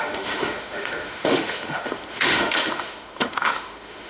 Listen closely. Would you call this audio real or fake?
fake